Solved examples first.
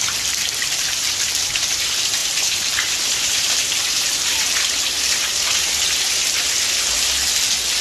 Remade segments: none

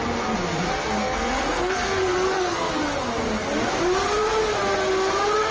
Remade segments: 1.0-2.7 (codec, SNAC)

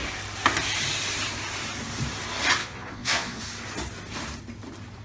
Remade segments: 2.6-3.4 (vocoder, Vocos)

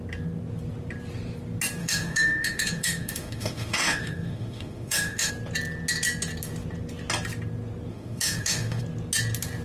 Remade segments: 1.8-5.3 (autoencoder, DAC-VAE); 7.9-8.8

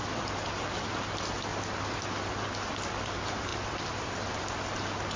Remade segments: 3.5-4.4 (vocoder, BigVGAN v2)

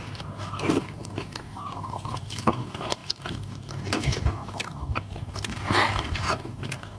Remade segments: 0.0-7.0 (codec, DAC)

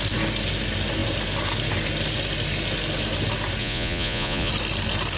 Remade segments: 3.6-4.5 (vocoder, Vocos)

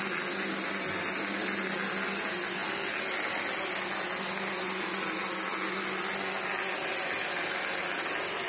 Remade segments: none